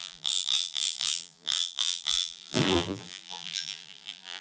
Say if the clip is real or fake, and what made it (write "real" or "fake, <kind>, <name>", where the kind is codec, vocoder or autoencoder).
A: fake, vocoder, BigVGAN v2